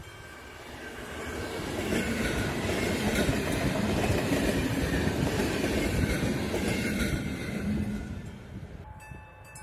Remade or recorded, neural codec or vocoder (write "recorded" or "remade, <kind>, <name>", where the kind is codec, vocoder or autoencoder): recorded